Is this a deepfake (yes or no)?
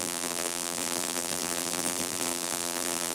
yes